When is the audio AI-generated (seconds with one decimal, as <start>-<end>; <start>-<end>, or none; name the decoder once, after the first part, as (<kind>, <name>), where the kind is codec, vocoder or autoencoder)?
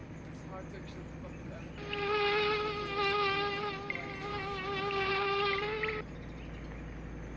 4.3-5.1 (codec, DAC)